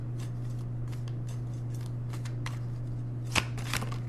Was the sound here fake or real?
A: real